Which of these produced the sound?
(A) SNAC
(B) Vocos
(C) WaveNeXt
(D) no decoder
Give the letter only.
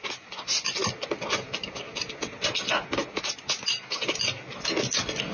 D